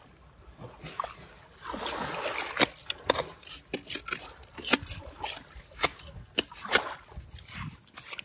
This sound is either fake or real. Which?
real